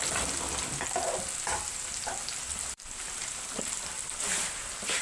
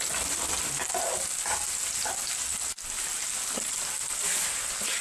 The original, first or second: second